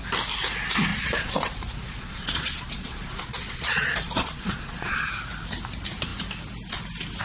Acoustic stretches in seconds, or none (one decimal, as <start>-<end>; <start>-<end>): 0.0-0.9; 5.1-7.2